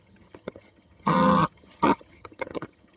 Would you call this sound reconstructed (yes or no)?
yes